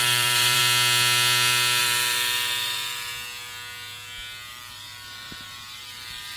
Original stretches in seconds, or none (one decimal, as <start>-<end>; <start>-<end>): 0.6-1.8; 3.1-4.5